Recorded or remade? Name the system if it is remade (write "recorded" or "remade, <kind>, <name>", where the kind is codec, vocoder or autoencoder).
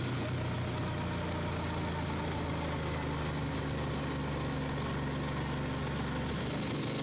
recorded